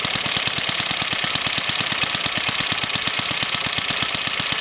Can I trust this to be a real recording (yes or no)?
yes